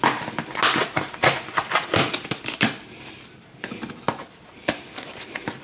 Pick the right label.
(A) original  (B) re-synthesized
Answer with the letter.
A